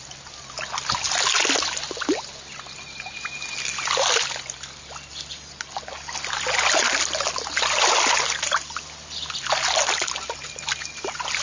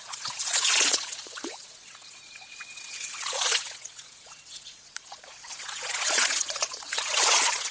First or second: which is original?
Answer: first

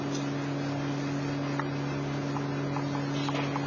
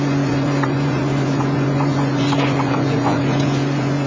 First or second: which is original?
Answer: first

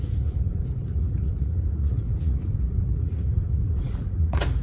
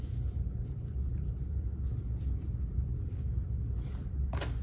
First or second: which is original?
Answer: second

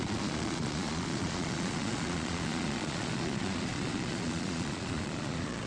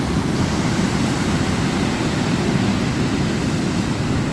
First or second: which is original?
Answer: second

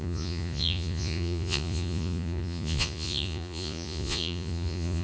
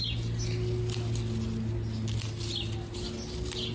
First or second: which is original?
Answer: second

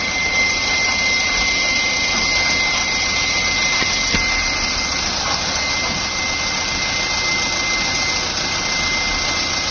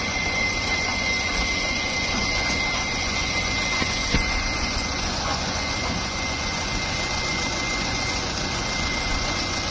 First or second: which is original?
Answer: first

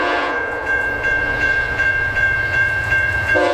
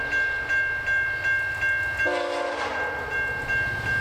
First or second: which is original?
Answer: second